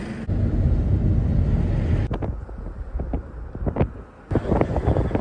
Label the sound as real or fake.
real